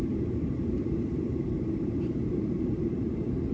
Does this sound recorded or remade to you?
remade